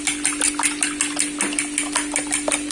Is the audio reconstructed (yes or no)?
no